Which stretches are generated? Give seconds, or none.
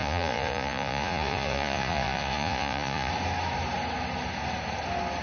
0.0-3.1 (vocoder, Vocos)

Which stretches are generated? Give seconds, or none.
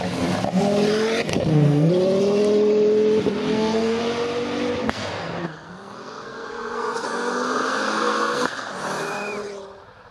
1.3-1.9 (codec, SNAC); 3.4-4.0; 4.8-8.7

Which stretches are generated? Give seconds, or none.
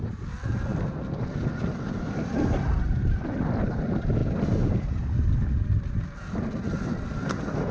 none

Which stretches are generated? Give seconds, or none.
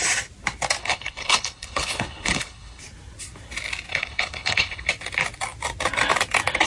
0.8-2.8 (codec, HILCodec); 3.9-4.9